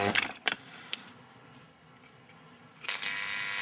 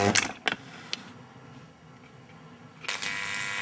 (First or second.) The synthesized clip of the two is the first